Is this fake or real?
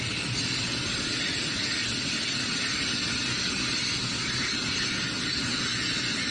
real